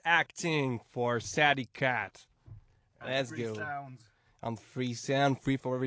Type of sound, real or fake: fake